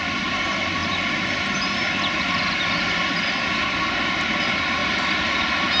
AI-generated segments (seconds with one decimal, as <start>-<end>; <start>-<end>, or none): none